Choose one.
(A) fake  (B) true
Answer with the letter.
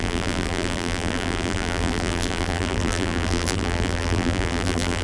A